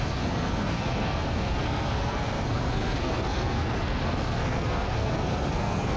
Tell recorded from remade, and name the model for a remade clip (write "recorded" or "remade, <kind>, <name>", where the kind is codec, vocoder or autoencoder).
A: remade, codec, SNAC